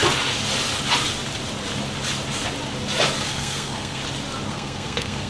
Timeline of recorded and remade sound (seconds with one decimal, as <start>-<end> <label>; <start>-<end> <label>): 0.0-3.2 recorded; 3.2-4.0 remade; 4.0-4.5 recorded; 4.5-5.3 remade